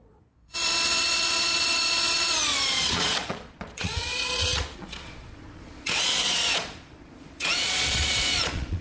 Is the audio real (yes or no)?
no